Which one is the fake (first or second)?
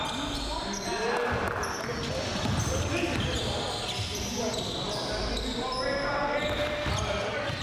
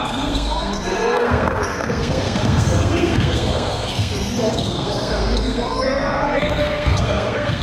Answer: second